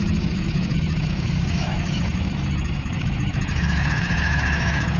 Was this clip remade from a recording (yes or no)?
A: yes